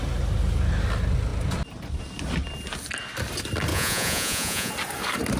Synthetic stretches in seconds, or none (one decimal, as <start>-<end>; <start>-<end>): 3.7-4.7